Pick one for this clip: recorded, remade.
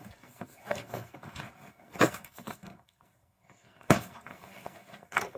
remade